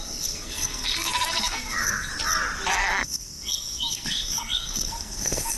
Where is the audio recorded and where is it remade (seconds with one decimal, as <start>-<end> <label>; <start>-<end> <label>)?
0.0-2.1 remade; 2.1-2.7 recorded; 2.7-5.6 remade